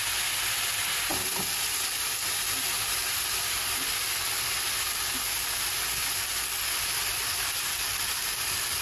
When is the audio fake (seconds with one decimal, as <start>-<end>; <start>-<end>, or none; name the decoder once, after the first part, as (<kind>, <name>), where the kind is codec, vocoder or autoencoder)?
none